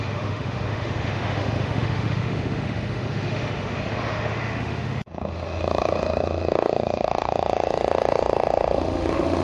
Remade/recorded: remade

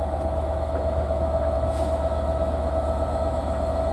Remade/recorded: remade